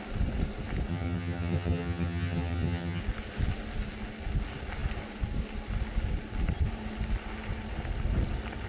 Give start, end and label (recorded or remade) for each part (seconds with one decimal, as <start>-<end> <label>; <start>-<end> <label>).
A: 0.0-0.9 recorded; 0.9-3.0 remade; 3.0-8.7 recorded